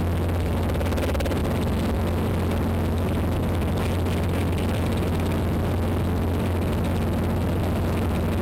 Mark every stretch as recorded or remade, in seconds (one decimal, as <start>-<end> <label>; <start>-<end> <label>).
0.0-4.4 recorded; 4.4-5.0 remade; 5.0-8.4 recorded